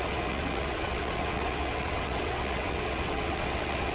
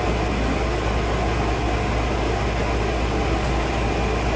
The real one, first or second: second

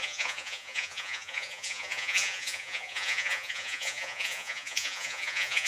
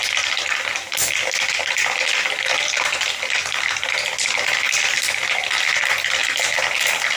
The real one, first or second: second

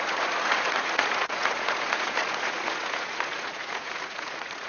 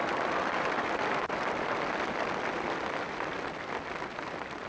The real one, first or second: second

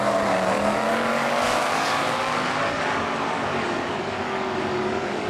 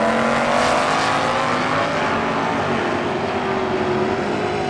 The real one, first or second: second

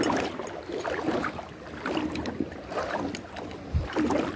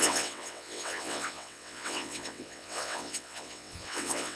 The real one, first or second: first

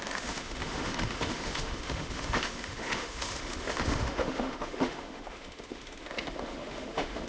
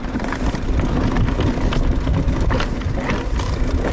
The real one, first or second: second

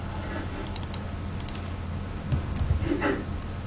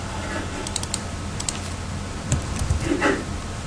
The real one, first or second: first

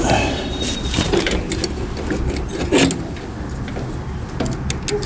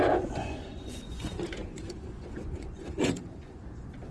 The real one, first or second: first